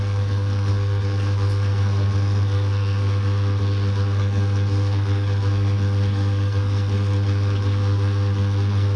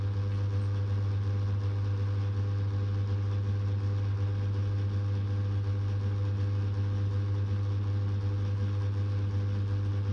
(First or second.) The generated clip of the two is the first